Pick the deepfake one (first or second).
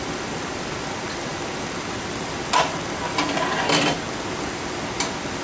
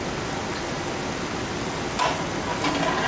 first